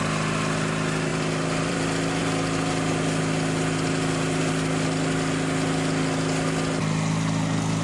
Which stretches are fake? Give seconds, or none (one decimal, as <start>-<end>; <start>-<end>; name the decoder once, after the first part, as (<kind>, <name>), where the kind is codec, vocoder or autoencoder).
1.1-2.2 (vocoder, BigVGAN v2)